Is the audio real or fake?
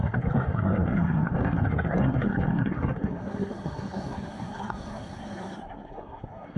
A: fake